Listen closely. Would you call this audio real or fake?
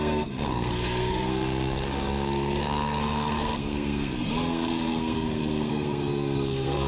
fake